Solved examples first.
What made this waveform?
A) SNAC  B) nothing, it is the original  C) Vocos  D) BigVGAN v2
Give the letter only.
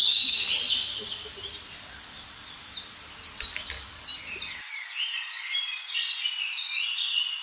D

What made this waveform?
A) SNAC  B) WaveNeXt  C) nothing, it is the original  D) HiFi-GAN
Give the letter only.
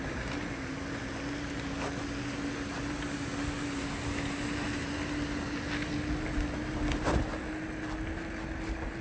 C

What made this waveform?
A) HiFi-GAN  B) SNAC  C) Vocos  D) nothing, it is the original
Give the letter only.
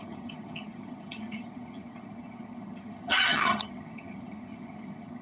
A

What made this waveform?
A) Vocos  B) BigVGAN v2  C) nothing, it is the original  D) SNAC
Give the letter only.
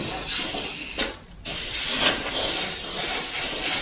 C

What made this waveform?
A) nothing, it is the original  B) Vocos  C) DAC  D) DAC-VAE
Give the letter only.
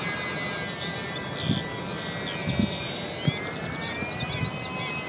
A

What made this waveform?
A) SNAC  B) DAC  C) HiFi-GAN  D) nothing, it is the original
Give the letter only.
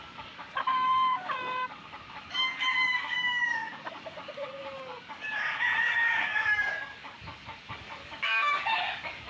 B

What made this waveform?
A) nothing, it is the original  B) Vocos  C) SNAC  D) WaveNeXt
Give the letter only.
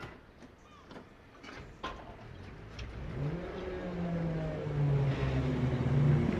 A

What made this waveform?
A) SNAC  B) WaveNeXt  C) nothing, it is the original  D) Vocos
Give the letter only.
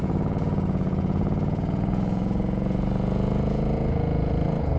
D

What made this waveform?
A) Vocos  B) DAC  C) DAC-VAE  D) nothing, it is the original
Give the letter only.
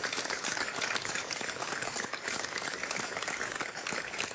B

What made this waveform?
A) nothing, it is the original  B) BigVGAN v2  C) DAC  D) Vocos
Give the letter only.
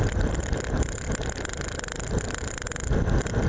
A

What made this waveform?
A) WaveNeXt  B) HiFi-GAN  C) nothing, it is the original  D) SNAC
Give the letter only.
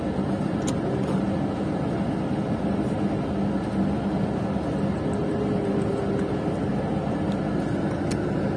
C